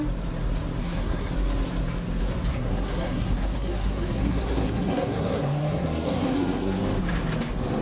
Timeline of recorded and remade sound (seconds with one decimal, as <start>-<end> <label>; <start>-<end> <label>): 0.0-0.8 recorded; 0.8-1.3 remade; 1.3-2.5 recorded; 2.5-6.8 remade; 6.8-7.8 recorded